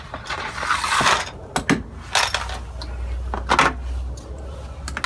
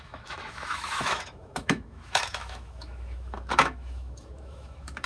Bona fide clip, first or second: first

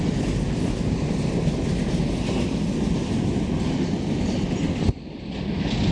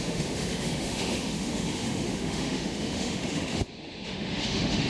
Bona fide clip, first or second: first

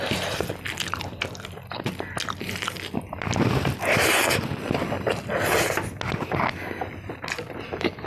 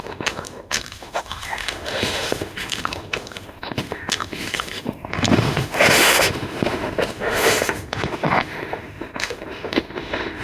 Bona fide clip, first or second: first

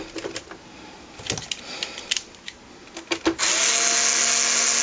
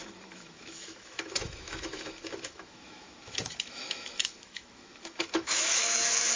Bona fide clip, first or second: first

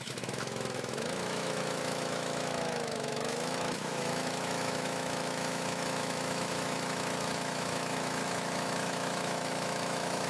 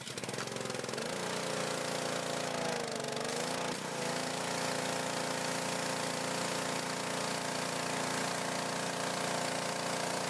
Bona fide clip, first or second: second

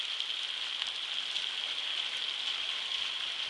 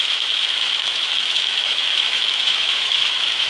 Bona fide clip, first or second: first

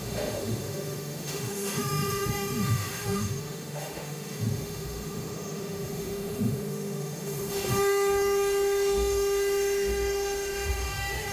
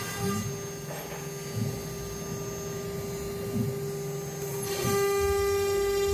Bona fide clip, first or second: second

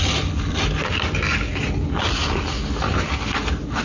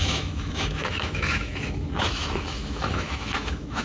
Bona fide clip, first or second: first